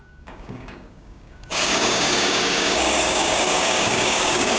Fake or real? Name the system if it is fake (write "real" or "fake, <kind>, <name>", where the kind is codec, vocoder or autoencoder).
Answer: fake, codec, DAC